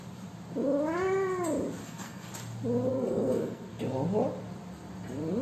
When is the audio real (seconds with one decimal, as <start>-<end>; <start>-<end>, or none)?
0.0-1.8; 2.3-2.9; 3.8-5.4